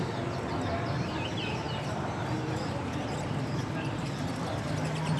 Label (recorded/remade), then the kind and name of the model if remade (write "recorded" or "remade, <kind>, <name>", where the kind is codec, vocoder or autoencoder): recorded